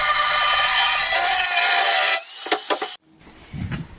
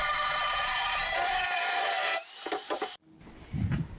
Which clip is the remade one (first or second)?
second